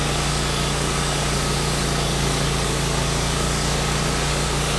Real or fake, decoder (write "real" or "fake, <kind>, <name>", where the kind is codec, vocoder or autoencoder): fake, codec, DAC